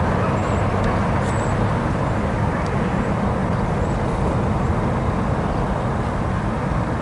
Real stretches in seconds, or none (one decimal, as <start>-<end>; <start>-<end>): 0.0-7.0

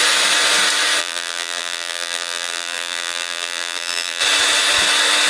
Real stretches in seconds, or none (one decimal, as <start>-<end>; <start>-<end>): 0.0-1.0; 4.2-5.3

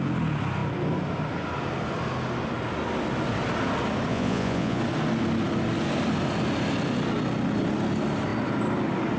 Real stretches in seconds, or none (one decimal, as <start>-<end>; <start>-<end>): 0.0-4.1; 4.8-9.2

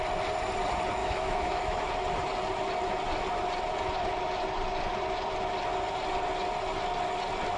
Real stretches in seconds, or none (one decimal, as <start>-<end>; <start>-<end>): 0.0-1.0; 1.9-7.6

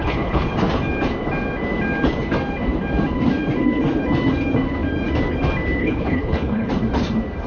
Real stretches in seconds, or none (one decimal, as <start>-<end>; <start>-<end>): 0.5-5.8; 6.7-7.5

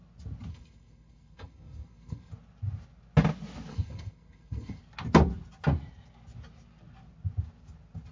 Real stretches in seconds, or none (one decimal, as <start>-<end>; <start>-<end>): 0.0-0.5; 2.3-3.7; 4.8-8.1